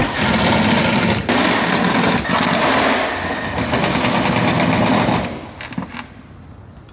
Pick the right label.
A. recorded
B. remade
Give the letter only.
A